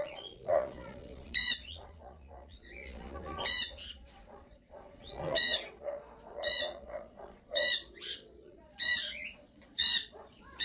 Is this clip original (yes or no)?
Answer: no